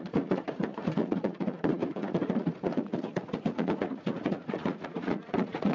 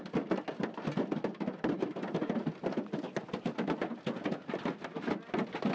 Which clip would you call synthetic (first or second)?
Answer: first